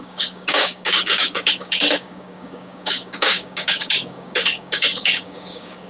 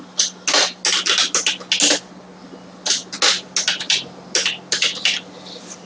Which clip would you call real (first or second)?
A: second